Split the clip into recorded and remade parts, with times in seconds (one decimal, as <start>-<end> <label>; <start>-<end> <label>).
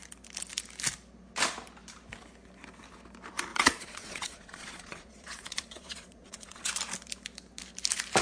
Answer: 0.0-3.5 recorded; 3.5-6.7 remade; 6.7-8.2 recorded